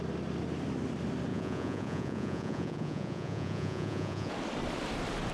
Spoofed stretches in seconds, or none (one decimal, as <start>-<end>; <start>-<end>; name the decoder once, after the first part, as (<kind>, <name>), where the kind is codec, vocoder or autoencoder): 1.3-4.3 (vocoder, Vocos)